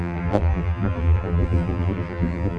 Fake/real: fake